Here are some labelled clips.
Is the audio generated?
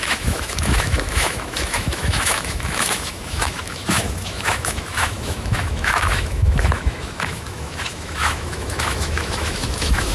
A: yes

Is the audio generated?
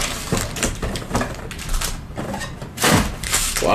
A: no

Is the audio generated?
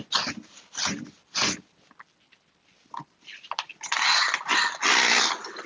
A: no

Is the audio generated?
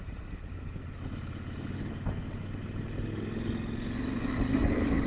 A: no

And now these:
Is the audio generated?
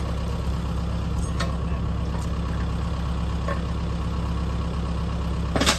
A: no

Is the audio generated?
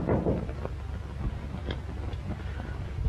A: no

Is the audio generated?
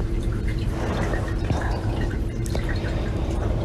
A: yes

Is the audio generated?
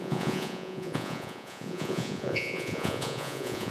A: yes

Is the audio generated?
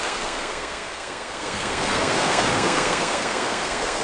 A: yes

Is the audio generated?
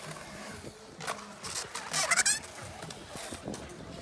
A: no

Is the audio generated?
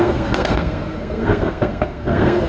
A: yes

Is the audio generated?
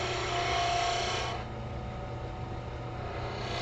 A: no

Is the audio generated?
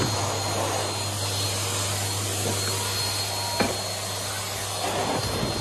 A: no